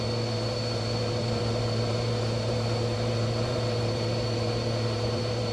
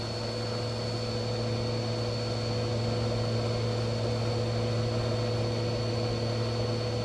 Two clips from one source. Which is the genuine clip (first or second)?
second